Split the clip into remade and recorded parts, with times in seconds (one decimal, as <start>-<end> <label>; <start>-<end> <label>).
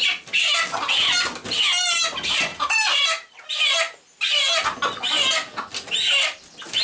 0.0-6.8 recorded